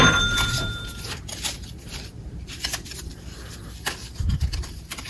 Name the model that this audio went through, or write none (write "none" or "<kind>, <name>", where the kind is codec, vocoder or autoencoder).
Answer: vocoder, BigVGAN v2